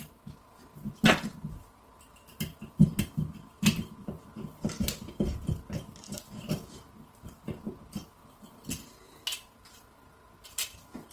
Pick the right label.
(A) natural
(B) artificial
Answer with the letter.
A